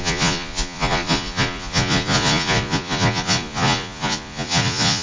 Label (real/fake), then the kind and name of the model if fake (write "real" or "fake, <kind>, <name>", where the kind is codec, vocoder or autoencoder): fake, vocoder, Vocos